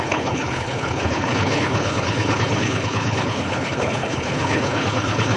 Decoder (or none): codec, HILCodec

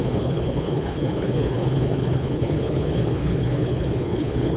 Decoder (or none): codec, HILCodec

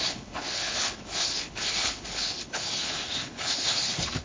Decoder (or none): codec, HILCodec